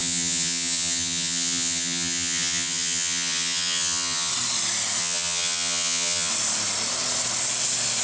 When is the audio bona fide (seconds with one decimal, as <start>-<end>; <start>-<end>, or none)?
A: 4.3-5.0; 6.3-8.0